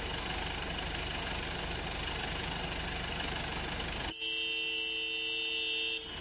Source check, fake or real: real